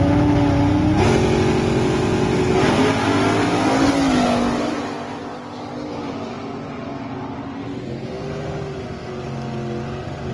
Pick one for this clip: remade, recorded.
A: recorded